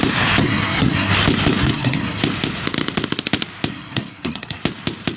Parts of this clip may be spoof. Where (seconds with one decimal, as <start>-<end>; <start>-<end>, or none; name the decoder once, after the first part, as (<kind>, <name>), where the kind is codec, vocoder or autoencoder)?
0.4-1.1 (codec, SNAC); 1.6-2.2; 3.7-4.6